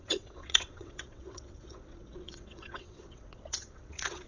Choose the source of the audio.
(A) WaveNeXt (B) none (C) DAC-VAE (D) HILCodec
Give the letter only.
A